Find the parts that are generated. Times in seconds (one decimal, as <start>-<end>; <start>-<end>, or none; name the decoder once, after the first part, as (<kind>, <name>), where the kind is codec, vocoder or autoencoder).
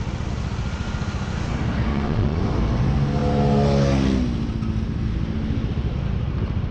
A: 1.9-2.4 (vocoder, Vocos)